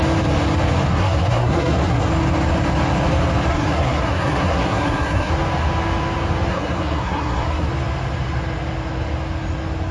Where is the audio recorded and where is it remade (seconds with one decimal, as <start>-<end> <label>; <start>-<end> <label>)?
0.0-0.9 recorded; 0.9-2.1 remade; 2.1-3.5 recorded; 3.5-5.3 remade; 5.3-6.5 recorded; 6.5-7.7 remade; 7.7-9.9 recorded